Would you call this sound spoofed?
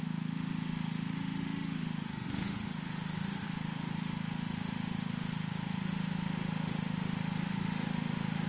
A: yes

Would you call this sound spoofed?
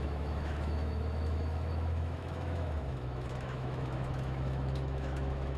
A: yes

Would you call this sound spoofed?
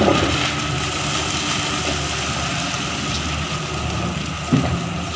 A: no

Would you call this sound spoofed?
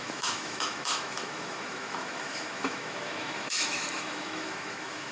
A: yes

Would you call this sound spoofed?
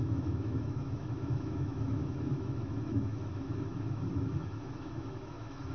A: yes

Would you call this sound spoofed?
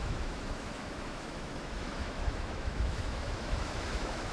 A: yes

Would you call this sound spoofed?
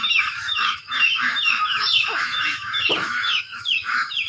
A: yes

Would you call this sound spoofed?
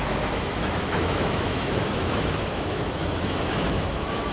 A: yes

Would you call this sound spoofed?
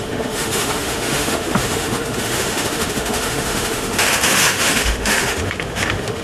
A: yes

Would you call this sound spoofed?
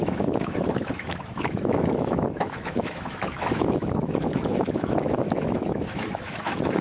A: yes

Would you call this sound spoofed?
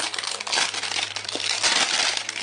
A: no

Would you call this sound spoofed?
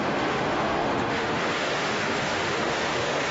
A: yes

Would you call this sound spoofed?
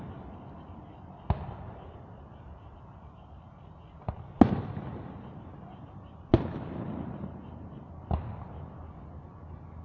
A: no